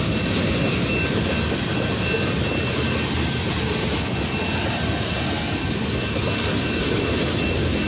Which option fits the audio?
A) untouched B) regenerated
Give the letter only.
A